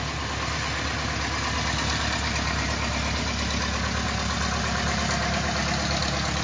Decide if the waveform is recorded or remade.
recorded